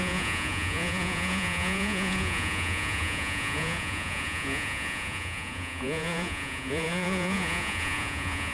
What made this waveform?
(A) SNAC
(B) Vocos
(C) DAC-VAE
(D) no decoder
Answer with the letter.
B